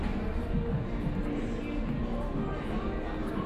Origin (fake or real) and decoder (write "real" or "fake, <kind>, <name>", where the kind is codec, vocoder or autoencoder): real